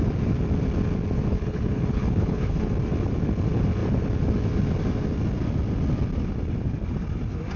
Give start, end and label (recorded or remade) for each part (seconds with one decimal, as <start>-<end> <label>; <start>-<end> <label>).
0.0-1.3 recorded; 1.3-2.6 remade; 2.6-7.6 recorded